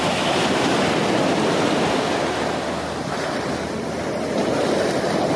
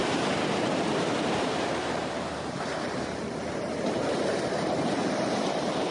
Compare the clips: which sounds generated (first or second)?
second